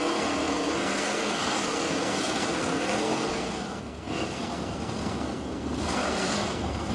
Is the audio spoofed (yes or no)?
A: yes